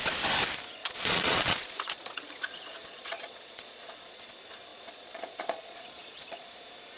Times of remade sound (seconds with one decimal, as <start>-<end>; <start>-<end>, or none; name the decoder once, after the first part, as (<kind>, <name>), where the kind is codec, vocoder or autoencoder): 0.8-4.3 (vocoder, Vocos); 4.7-6.6